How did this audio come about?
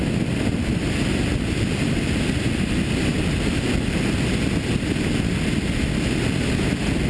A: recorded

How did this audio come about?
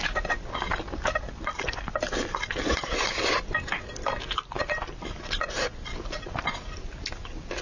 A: recorded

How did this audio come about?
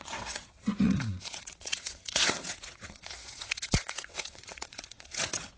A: remade